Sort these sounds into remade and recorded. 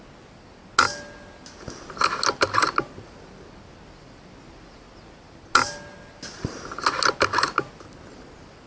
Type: recorded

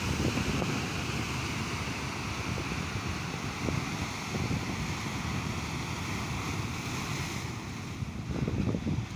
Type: recorded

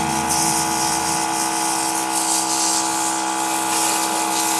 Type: recorded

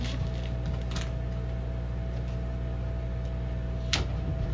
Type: recorded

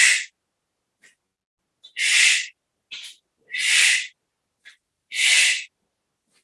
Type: recorded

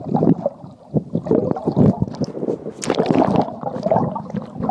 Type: recorded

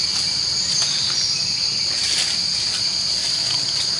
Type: recorded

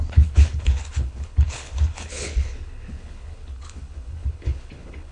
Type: remade